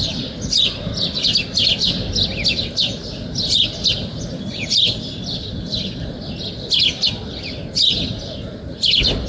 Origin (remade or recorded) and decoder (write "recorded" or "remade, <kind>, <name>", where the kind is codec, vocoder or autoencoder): recorded